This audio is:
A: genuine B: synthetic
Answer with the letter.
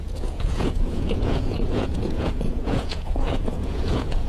B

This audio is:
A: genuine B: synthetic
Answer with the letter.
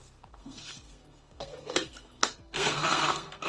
B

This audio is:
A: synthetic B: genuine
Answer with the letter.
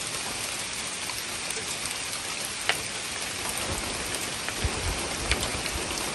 B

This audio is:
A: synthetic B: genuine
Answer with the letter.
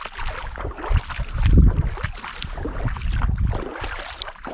B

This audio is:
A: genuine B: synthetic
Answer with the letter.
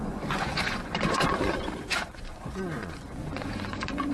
B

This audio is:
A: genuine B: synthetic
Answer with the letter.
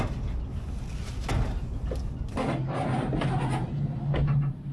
A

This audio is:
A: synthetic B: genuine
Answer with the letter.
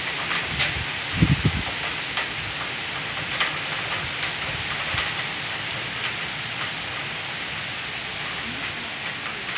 B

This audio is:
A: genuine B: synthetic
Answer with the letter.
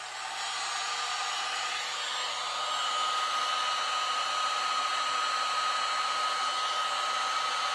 A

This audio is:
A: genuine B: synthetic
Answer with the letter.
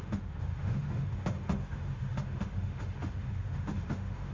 B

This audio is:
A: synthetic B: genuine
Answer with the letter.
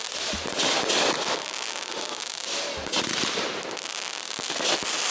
B